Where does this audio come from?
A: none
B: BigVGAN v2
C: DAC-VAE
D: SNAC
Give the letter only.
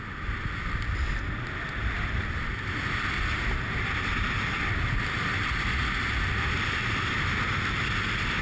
A